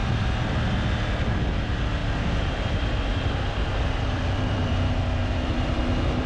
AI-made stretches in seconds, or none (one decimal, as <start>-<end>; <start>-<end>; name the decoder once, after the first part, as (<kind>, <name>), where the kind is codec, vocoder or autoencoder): 2.0-5.8 (vocoder, BigVGAN v2)